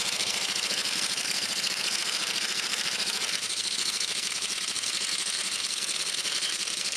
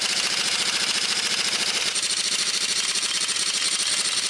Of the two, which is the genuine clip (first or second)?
second